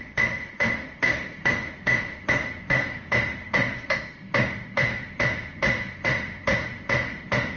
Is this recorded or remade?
remade